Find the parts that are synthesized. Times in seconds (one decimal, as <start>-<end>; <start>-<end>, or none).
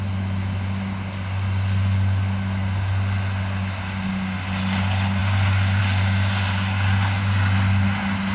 none